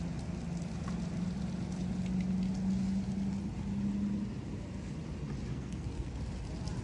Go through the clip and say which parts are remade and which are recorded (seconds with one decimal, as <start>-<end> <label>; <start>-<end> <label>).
0.0-5.5 recorded; 5.5-6.2 remade; 6.2-6.8 recorded